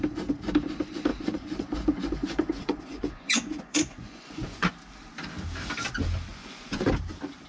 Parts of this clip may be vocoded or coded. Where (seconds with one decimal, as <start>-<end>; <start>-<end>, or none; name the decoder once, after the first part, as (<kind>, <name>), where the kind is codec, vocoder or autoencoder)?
1.1-4.7 (vocoder, Vocos); 6.3-6.9